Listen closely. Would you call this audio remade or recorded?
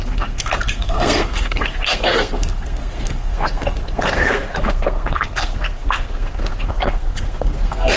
remade